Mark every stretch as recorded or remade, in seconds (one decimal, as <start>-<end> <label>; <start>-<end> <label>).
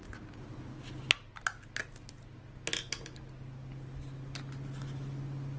0.0-5.6 recorded